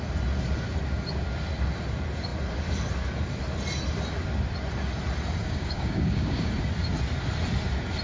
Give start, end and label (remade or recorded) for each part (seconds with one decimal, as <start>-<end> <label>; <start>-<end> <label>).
0.0-5.4 recorded; 5.4-6.5 remade; 6.5-8.0 recorded